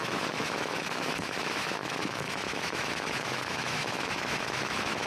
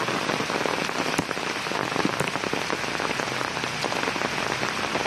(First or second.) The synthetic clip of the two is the first